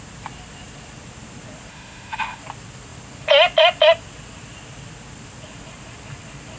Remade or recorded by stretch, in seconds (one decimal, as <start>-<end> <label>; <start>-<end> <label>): 0.0-1.7 recorded; 1.7-2.4 remade; 2.4-6.6 recorded